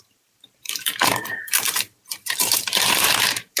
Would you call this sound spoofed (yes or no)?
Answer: yes